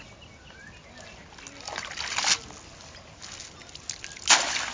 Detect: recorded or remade recorded